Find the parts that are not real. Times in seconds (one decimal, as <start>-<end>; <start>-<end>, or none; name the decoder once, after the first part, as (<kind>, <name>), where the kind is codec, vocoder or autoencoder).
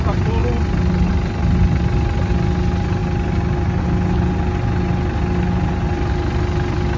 none